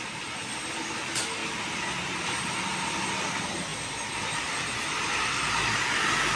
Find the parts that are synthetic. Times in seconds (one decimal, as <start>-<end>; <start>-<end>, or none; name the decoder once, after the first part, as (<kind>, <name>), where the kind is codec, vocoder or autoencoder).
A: none